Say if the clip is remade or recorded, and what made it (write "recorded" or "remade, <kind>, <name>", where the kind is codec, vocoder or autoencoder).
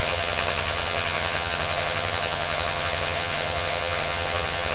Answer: remade, vocoder, HiFi-GAN